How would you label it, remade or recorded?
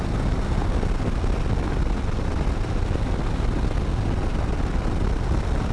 recorded